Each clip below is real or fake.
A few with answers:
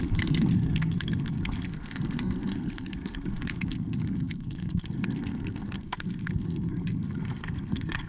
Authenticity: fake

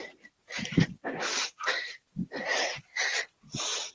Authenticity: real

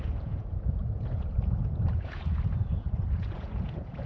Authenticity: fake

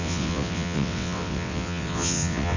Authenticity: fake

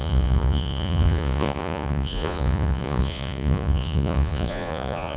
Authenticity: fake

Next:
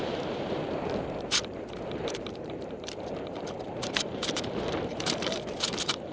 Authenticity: fake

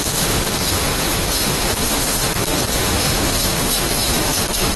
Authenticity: fake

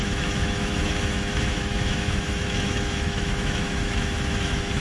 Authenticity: fake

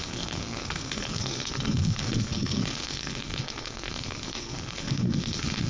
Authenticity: fake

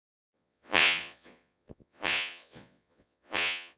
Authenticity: fake